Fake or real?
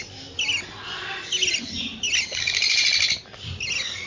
real